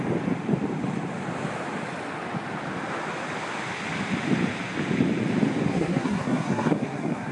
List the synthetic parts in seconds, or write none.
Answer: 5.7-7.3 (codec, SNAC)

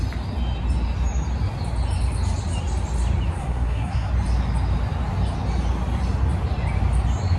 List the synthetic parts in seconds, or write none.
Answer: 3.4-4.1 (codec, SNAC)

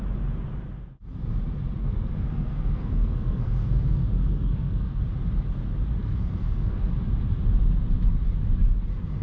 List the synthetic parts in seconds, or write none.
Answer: 1.8-5.0 (codec, SNAC); 6.0-6.9